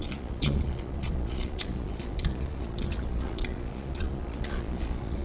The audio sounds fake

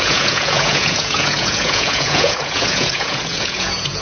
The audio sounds fake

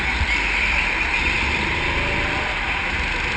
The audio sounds real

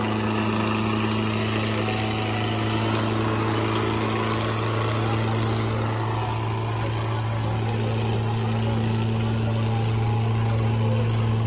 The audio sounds real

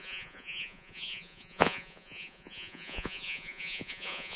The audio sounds fake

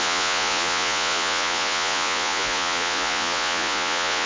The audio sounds fake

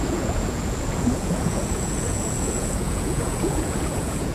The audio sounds fake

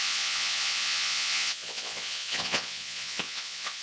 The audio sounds fake